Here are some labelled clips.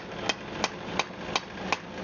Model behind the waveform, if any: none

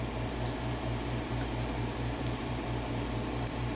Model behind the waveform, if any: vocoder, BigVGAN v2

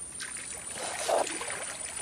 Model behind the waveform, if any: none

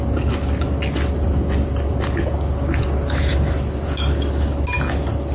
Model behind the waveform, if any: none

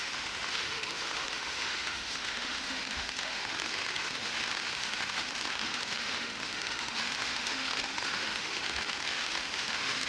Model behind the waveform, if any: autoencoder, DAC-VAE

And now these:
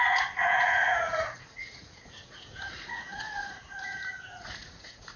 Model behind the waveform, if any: vocoder, Vocos